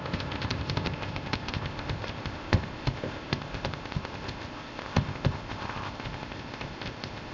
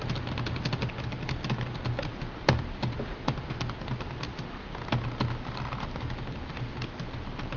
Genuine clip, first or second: second